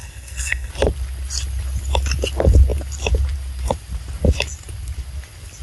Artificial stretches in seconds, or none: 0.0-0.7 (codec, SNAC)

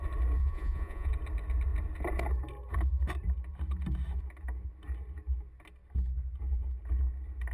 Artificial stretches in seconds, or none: 0.4-1.1 (vocoder, Vocos)

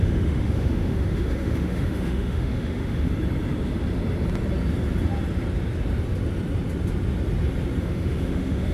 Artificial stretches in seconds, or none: 0.0-3.1 (autoencoder, DAC-VAE); 7.8-8.7

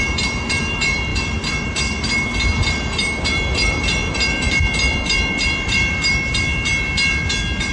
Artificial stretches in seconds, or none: 0.0-6.5 (vocoder, BigVGAN v2)

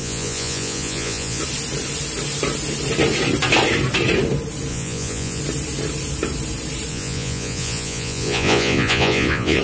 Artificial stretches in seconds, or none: 0.0-1.4 (vocoder, Vocos); 4.7-5.4; 6.9-9.6

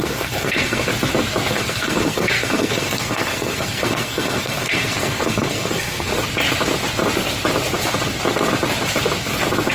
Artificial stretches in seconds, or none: 0.0-0.9 (codec, SNAC); 1.5-6.1

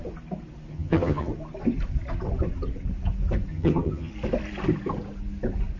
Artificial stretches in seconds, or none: 0.7-1.3 (vocoder, HiFi-GAN); 3.5-4.1

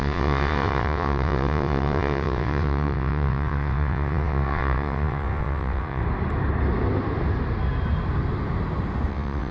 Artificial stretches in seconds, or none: 0.0-6.0 (vocoder, WaveNeXt); 9.1-9.5